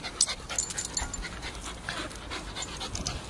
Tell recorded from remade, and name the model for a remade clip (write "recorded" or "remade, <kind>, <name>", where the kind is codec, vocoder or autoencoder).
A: recorded